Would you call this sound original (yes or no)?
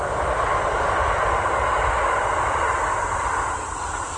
yes